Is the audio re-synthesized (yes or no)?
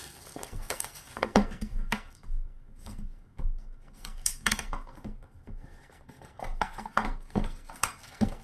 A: yes